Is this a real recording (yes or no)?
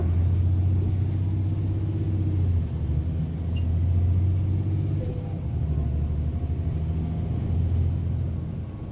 yes